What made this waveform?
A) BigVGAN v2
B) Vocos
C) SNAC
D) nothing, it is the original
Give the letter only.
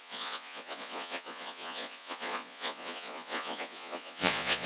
B